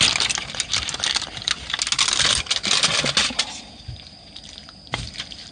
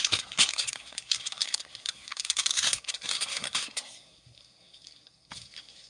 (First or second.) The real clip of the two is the first